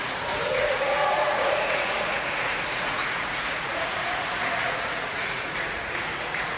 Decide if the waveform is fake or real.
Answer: fake